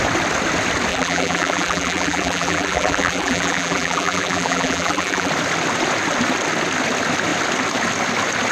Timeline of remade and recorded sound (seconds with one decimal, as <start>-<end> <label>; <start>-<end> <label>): 0.0-0.9 recorded; 0.9-5.3 remade; 5.3-8.5 recorded